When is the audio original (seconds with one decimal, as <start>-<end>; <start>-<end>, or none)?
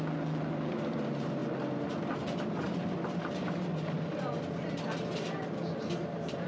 0.0-6.5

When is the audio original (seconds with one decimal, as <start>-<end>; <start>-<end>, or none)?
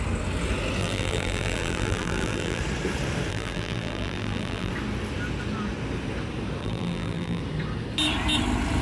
0.0-0.8; 2.6-3.3; 4.7-6.6; 7.4-8.8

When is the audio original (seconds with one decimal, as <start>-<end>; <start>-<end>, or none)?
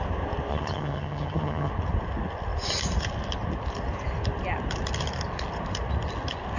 0.0-0.5; 1.7-6.6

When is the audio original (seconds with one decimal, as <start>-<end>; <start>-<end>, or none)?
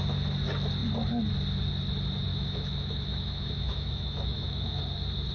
0.0-2.3; 4.8-5.3